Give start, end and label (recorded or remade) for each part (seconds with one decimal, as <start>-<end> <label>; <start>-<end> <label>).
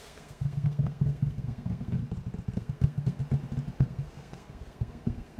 0.0-2.0 remade; 2.0-2.5 recorded; 2.5-3.2 remade; 3.2-3.8 recorded; 3.8-5.4 remade